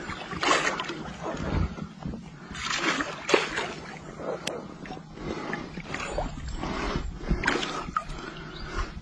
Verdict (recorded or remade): recorded